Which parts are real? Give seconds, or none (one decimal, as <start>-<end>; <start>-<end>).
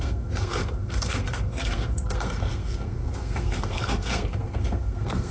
none